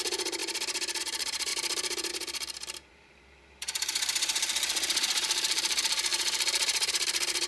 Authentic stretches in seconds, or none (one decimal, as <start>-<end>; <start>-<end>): 0.4-1.0